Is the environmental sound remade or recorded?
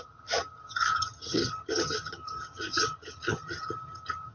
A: remade